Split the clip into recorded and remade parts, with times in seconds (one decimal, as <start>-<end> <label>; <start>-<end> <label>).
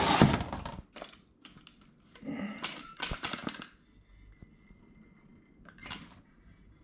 0.0-5.8 recorded; 5.8-6.8 remade